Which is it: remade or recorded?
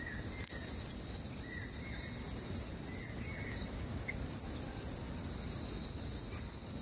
recorded